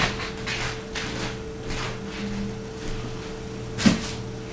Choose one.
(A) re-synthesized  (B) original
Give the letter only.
B